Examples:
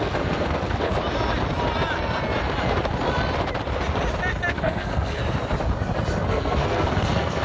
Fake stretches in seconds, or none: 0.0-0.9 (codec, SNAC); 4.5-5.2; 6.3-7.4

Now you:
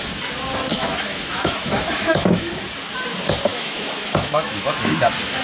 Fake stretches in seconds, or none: 0.7-2.5 (autoencoder, DAC-VAE); 3.5-5.0